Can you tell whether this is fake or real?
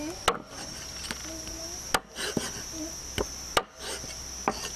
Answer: real